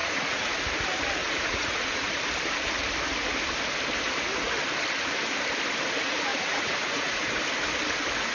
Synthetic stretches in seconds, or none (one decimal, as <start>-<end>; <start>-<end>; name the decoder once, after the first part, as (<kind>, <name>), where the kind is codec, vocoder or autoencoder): 0.0-0.5 (vocoder, Vocos); 1.2-2.2; 6.3-7.4